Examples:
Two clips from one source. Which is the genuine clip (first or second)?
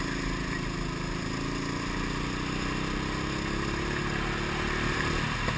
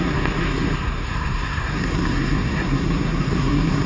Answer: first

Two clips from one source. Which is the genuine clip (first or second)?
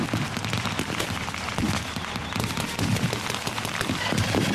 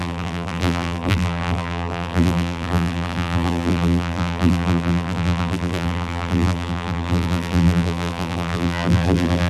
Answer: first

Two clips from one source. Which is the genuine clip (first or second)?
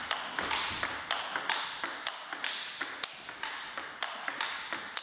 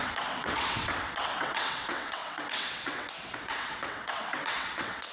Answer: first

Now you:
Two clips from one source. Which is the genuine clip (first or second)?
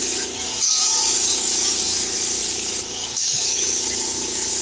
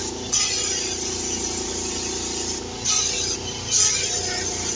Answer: second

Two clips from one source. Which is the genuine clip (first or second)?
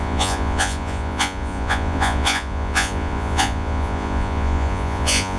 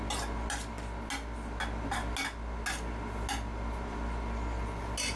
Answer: second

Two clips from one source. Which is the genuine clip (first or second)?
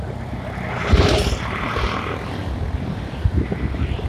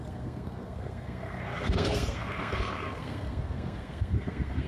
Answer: first